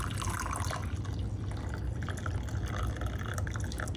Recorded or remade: recorded